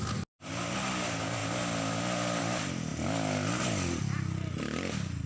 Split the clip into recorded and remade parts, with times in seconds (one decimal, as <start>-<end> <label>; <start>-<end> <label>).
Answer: 0.0-5.3 recorded